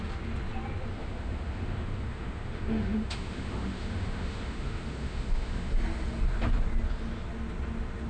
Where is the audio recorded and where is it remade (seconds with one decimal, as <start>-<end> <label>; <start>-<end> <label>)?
0.0-0.9 recorded; 0.9-5.7 remade; 5.7-8.1 recorded